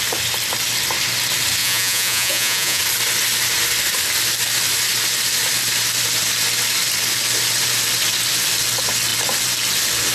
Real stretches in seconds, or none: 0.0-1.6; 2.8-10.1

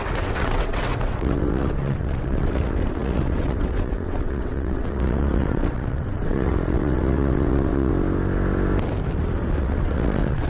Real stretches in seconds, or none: 7.9-9.6

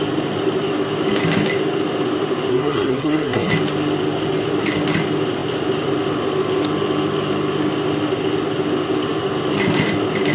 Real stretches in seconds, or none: 0.0-2.5; 3.5-10.3